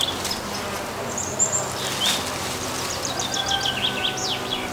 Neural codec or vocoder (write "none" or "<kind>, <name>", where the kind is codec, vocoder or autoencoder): none